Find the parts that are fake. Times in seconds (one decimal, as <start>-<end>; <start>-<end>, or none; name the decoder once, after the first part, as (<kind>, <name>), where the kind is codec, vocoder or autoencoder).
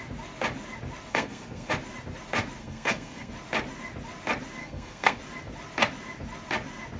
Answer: 1.1-1.7 (codec, SNAC); 2.6-3.3; 4.6-5.2